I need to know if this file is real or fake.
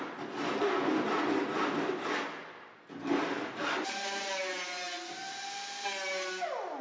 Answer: real